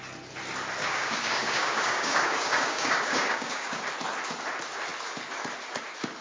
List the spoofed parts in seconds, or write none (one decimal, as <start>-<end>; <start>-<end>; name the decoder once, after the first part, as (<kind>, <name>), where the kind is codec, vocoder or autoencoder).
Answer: 0.8-3.8 (codec, DAC)